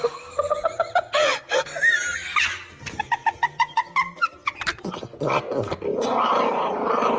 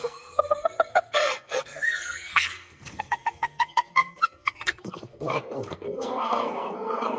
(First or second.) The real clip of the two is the first